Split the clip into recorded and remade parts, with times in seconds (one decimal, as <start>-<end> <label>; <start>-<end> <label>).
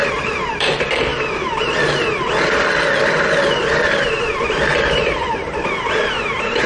0.0-1.1 remade; 1.1-4.3 recorded; 4.3-6.7 remade